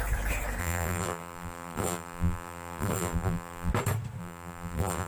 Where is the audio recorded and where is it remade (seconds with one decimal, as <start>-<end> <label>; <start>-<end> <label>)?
0.0-0.6 recorded; 0.6-3.7 remade; 3.7-4.2 recorded; 4.2-5.1 remade